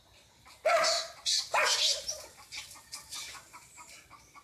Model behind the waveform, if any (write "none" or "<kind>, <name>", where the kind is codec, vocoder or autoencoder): none